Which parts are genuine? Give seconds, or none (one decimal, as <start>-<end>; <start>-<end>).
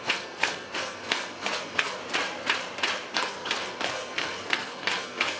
2.0-3.1